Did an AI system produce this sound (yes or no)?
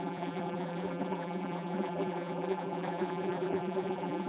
yes